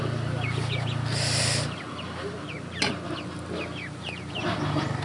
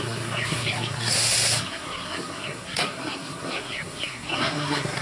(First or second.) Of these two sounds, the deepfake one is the second